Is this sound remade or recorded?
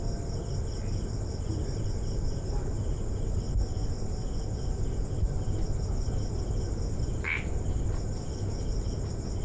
recorded